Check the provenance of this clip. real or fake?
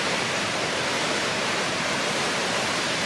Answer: fake